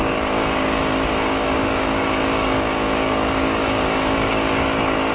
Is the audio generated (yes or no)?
yes